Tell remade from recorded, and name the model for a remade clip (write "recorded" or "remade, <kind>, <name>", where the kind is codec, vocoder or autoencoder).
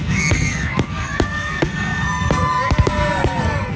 remade, codec, SNAC